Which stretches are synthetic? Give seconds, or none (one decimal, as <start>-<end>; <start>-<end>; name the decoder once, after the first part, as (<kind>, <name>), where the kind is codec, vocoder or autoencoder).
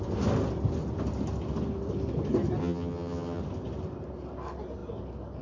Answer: 2.6-3.4 (vocoder, HiFi-GAN)